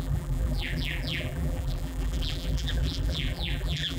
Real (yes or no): no